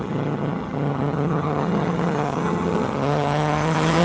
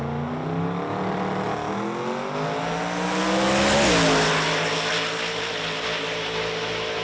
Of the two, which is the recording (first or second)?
second